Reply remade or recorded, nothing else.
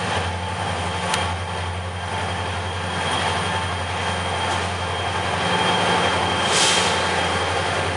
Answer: recorded